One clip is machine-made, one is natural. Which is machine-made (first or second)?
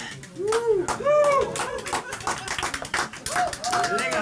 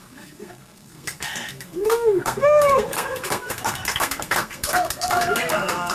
second